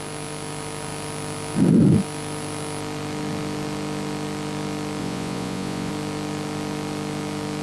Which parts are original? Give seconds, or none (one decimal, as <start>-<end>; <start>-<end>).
0.0-5.0; 5.9-7.6